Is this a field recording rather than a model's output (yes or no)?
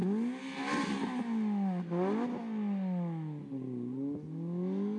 yes